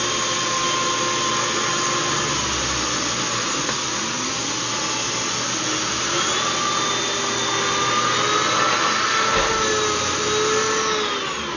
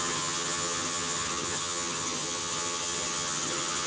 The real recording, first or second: first